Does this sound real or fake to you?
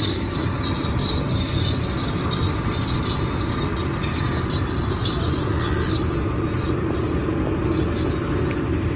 real